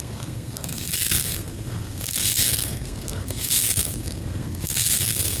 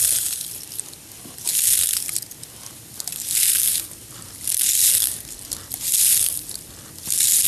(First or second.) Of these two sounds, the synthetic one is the first